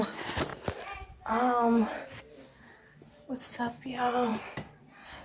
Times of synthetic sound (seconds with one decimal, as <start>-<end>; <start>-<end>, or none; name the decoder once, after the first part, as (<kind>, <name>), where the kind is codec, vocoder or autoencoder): none